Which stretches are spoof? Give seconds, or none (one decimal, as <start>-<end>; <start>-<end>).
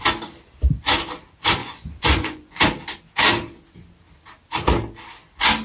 1.6-2.6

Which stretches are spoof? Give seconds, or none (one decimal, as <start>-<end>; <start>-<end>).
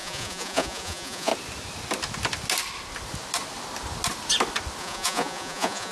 0.0-1.3; 4.8-5.9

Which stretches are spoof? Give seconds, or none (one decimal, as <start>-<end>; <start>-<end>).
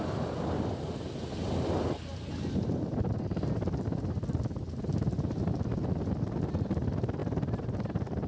none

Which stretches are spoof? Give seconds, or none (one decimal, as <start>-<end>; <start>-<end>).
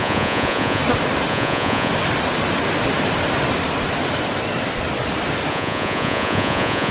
0.0-0.8; 1.3-1.9; 5.5-6.9